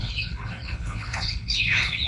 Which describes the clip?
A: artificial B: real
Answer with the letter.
A